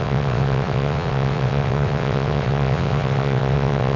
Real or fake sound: fake